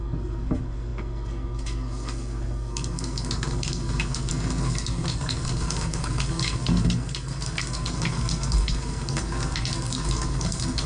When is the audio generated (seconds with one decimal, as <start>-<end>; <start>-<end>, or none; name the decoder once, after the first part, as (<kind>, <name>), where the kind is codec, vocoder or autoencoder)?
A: 0.0-10.9 (codec, SNAC)